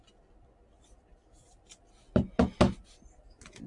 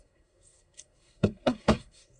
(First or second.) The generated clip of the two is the second